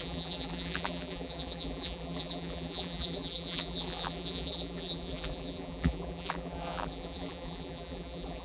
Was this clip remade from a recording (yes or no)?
yes